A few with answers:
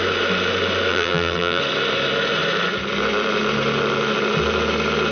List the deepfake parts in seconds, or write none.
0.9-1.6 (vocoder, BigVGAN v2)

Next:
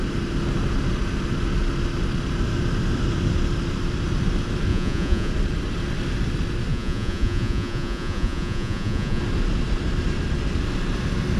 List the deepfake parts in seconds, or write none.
4.7-5.3 (vocoder, Vocos); 6.7-9.2